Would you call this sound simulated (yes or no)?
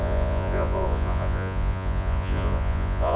yes